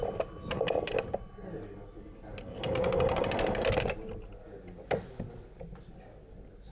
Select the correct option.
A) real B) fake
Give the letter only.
A